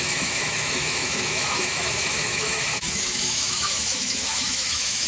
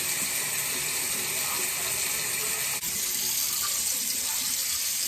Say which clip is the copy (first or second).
first